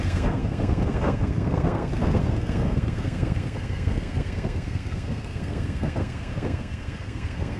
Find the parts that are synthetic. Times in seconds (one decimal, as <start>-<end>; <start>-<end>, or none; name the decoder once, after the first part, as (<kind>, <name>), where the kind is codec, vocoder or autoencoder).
0.0-7.6 (codec, SNAC)